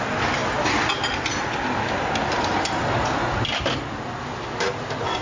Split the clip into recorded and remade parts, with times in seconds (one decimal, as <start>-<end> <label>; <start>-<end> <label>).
0.0-5.2 recorded